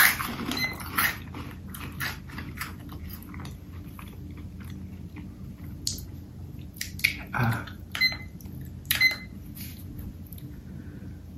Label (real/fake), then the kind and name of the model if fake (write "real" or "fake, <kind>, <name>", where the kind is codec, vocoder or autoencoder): real